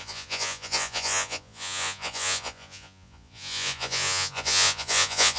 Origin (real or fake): fake